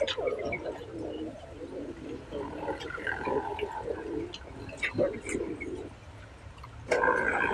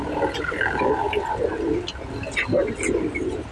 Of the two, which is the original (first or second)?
second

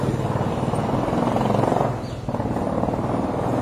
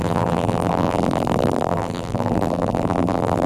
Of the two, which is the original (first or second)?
first